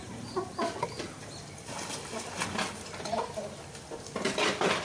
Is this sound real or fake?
real